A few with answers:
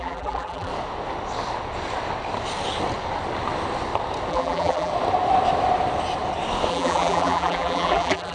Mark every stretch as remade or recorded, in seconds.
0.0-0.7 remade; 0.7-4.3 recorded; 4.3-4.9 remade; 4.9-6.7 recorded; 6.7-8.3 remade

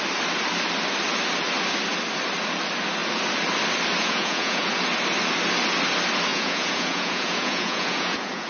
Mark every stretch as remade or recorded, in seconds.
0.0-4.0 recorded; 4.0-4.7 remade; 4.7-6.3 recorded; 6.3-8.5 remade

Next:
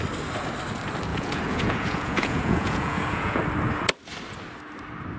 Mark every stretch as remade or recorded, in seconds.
0.0-1.1 recorded; 1.1-3.4 remade; 3.4-5.2 recorded

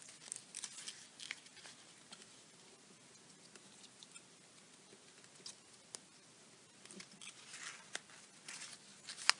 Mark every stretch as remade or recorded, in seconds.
0.0-9.4 recorded

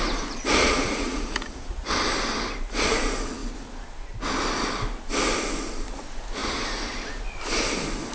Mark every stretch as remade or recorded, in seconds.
0.0-0.6 recorded; 0.6-1.9 remade; 1.9-8.1 recorded